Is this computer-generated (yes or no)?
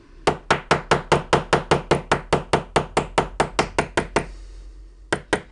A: no